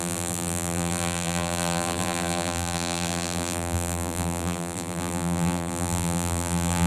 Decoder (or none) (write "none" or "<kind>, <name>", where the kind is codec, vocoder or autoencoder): vocoder, BigVGAN v2